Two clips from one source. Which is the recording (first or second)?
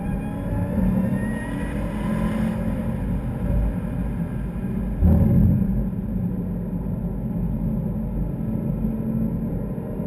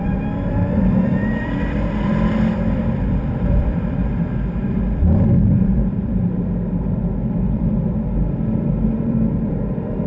first